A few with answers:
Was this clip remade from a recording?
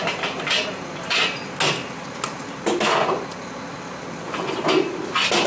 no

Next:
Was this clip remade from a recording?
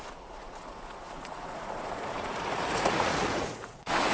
yes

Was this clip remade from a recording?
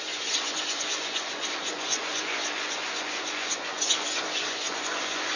yes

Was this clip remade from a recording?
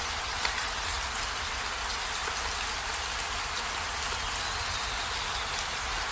no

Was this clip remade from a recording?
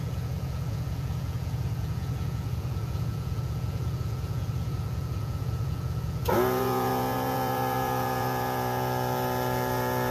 yes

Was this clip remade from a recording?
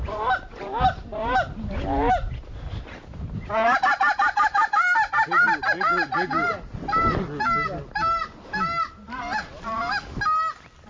no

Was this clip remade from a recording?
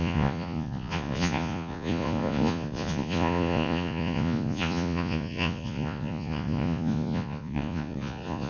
yes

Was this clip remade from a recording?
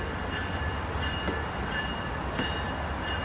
no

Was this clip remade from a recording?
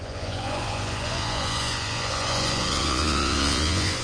yes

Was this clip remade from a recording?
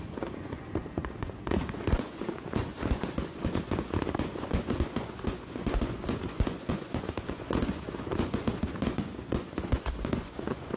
yes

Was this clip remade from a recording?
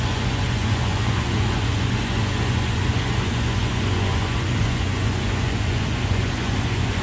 yes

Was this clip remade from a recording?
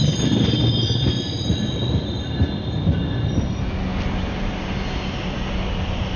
no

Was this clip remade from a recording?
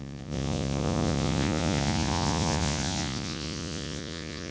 yes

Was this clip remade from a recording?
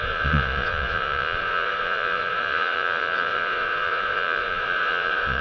yes